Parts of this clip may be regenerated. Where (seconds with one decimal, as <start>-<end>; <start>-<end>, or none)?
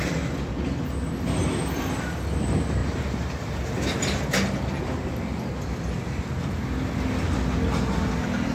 none